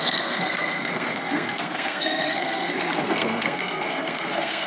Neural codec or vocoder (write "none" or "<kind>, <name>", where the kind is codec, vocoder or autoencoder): codec, SNAC